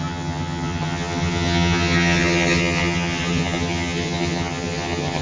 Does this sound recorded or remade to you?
remade